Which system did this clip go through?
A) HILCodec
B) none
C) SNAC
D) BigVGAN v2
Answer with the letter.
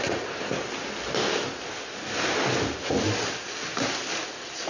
B